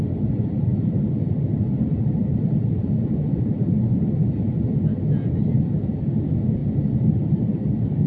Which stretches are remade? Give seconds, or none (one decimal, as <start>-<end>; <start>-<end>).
none